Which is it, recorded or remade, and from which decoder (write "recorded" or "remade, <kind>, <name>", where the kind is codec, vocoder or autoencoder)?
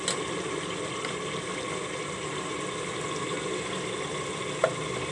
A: recorded